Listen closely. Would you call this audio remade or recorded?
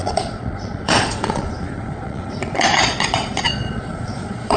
remade